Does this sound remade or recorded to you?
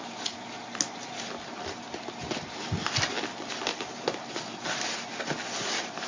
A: recorded